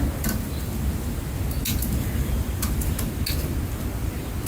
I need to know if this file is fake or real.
real